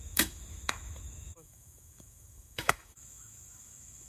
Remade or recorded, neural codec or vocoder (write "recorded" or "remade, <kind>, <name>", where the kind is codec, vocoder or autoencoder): remade, autoencoder, DAC-VAE